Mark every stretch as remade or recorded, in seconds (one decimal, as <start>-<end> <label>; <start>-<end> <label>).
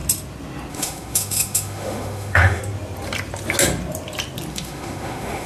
0.0-0.7 recorded; 0.7-2.6 remade; 2.6-4.5 recorded; 4.5-5.5 remade